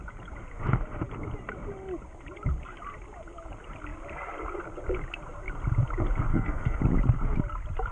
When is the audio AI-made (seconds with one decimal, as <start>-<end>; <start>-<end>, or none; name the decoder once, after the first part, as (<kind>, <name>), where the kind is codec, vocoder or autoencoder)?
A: 6.3-6.8 (codec, SNAC)